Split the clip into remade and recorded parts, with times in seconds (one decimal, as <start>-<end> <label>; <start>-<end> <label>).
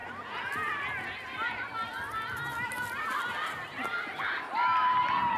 0.0-5.4 recorded